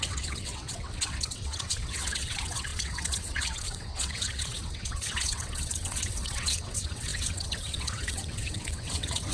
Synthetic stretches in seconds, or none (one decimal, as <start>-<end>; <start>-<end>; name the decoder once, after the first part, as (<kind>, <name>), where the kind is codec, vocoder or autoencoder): 0.0-9.3 (vocoder, WaveNeXt)